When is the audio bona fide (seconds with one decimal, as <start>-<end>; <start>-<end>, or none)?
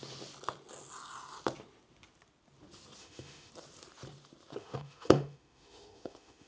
0.0-3.0; 3.5-4.6